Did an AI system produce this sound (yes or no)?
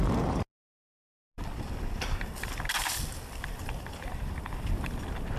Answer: no